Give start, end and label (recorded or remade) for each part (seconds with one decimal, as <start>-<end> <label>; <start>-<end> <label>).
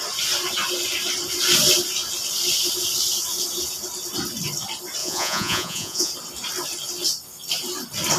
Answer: 0.0-5.0 recorded; 5.0-6.1 remade; 6.1-8.2 recorded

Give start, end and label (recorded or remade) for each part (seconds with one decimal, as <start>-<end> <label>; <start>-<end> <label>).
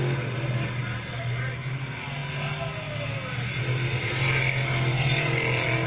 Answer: 0.0-5.9 recorded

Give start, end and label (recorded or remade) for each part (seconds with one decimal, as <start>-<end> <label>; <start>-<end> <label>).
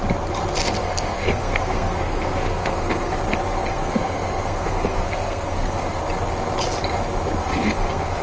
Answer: 0.0-0.8 recorded; 0.8-3.2 remade; 3.2-3.7 recorded; 3.7-6.0 remade; 6.0-7.4 recorded; 7.4-8.2 remade